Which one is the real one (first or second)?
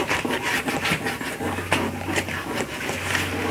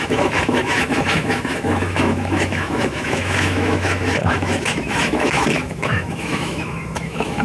first